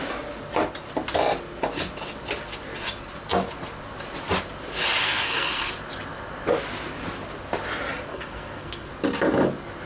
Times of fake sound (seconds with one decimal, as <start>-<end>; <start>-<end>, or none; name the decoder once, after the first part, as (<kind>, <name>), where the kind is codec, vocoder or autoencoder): 5.0-5.7 (codec, SNAC); 8.1-8.9